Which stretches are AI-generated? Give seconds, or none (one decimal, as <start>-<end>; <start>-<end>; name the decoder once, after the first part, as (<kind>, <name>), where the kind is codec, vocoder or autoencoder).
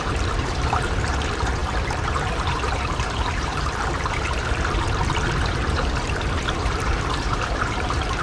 0.0-8.2 (vocoder, BigVGAN v2)